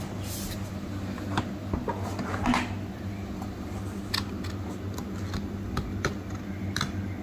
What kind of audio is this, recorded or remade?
recorded